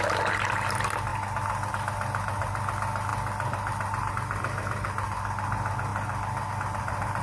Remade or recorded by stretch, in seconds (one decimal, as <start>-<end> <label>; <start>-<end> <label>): 0.0-7.2 recorded